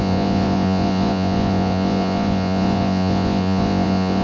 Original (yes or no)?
no